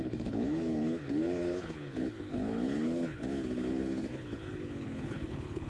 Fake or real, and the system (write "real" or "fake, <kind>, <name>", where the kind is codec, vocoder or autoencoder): fake, codec, HILCodec